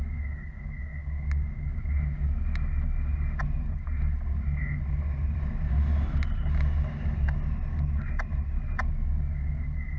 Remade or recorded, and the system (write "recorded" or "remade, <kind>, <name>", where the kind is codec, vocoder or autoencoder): recorded